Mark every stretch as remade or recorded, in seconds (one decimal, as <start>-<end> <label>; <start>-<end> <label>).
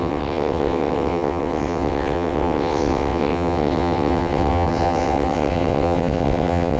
0.0-6.8 remade